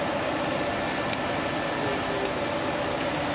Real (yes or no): yes